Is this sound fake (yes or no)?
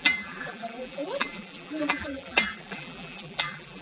yes